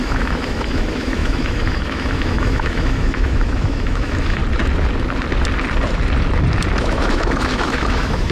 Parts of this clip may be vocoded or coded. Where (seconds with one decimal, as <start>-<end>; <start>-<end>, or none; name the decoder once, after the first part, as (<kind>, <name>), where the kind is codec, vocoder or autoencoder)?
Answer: 0.0-4.4 (autoencoder, DAC-VAE); 6.8-8.3